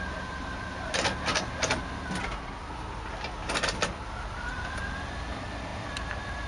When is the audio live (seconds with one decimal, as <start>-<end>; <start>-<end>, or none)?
0.0-3.4; 4.8-6.5